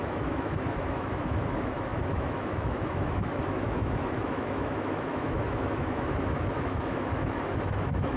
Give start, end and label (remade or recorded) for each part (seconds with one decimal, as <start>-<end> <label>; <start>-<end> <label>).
0.0-8.2 remade